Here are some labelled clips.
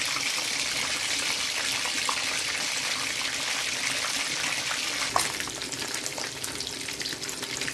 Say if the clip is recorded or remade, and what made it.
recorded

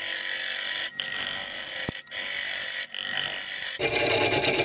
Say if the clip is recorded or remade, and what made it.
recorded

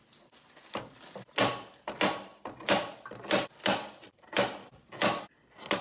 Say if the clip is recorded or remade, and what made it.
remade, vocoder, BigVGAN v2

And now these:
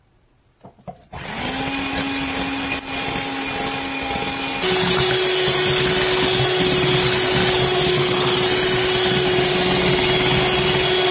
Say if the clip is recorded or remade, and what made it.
recorded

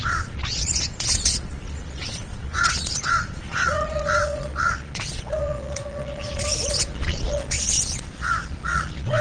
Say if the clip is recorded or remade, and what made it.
remade, vocoder, Vocos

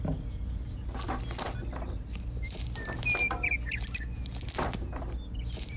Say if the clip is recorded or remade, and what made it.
recorded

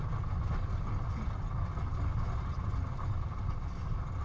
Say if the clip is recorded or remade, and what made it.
recorded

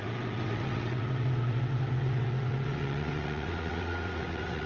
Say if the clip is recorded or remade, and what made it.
remade, vocoder, WaveNeXt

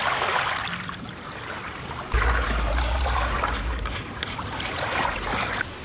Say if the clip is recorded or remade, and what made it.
recorded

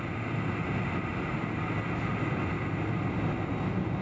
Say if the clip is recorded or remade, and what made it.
recorded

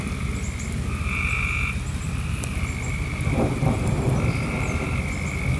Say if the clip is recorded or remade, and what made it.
recorded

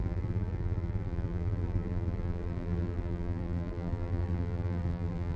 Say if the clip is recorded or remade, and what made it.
remade, vocoder, BigVGAN v2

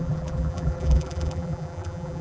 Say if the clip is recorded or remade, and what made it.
remade, vocoder, BigVGAN v2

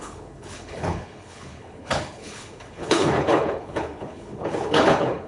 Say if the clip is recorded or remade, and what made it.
remade, codec, HILCodec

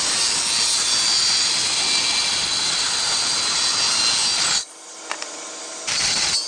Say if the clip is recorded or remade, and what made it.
recorded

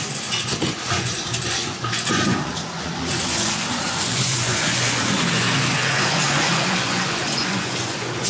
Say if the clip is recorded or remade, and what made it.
remade, vocoder, Vocos